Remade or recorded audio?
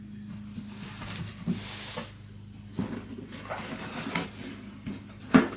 recorded